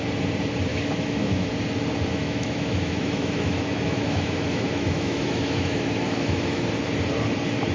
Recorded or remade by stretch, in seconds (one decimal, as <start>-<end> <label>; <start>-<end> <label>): 0.0-0.7 recorded; 0.7-1.5 remade; 1.5-2.1 recorded; 2.1-6.7 remade; 6.7-7.7 recorded